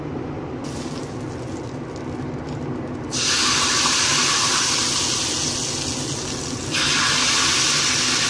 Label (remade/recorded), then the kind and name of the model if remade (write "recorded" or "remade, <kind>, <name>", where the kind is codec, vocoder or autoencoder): recorded